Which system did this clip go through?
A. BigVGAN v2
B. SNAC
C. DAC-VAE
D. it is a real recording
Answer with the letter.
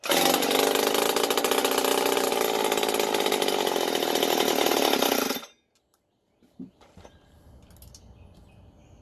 D